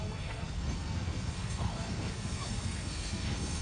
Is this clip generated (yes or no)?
yes